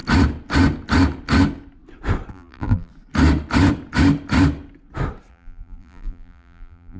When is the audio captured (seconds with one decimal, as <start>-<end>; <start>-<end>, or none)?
0.0-2.3; 2.9-5.3